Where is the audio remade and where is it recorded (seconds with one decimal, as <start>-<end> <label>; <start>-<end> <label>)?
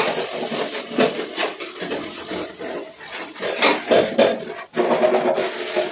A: 0.0-5.9 recorded